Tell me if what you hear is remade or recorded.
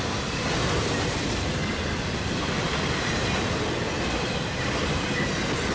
recorded